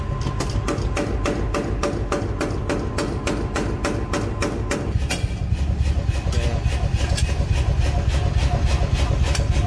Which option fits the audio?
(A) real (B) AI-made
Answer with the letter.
A